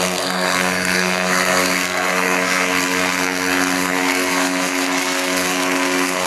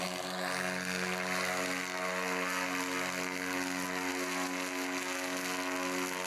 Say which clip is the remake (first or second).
first